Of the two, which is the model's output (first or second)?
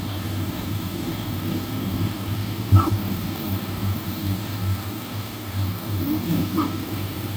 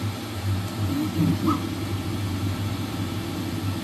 first